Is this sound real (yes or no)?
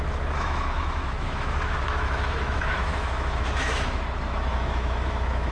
no